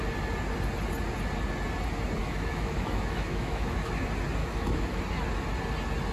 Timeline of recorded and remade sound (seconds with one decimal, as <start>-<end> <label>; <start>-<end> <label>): 0.0-2.2 recorded; 2.2-3.9 remade; 3.9-4.4 recorded; 4.4-5.0 remade; 5.0-6.1 recorded